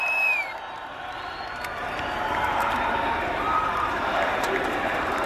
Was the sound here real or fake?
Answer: fake